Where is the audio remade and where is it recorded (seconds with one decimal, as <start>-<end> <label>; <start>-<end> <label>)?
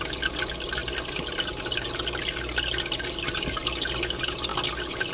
0.0-5.1 recorded